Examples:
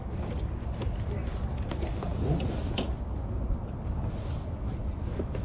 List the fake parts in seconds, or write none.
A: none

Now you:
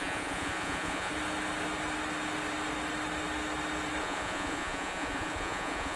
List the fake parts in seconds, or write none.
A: 0.0-1.1 (vocoder, Vocos); 4.0-6.0